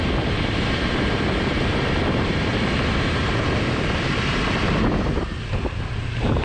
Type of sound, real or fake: fake